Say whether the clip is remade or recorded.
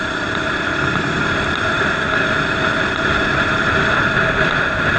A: recorded